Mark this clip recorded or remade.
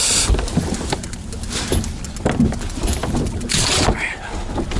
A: recorded